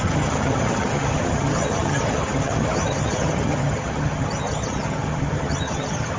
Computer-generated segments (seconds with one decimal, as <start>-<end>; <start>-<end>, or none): 0.0-6.2

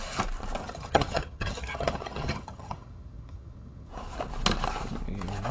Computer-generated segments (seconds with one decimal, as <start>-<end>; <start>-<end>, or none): 0.6-3.9

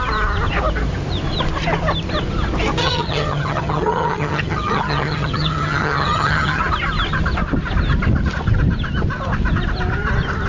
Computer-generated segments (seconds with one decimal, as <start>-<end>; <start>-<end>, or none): 2.8-6.6

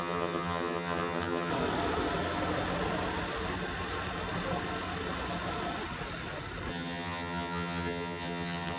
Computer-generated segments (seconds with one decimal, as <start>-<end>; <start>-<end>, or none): 0.0-1.5; 6.7-8.8

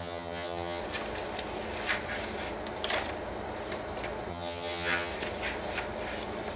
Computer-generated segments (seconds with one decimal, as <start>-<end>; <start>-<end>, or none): 0.0-0.8; 4.3-5.1